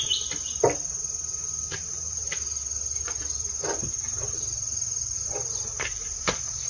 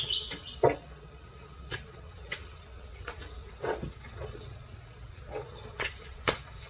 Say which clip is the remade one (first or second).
second